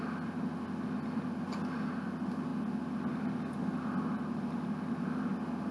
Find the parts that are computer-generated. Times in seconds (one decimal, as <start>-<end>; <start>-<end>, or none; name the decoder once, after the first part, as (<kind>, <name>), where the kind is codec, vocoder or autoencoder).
none

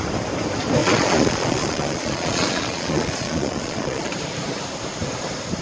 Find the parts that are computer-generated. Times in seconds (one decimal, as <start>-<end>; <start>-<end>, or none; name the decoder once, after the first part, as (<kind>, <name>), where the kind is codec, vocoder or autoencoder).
0.8-4.1 (vocoder, Vocos)